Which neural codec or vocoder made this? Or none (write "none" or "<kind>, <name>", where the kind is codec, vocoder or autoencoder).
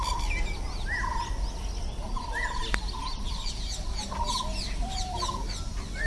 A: none